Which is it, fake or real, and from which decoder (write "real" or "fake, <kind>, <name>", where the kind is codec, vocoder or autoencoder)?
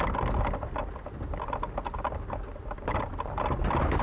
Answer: real